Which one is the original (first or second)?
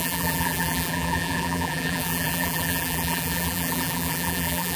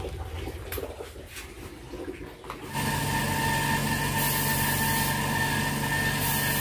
second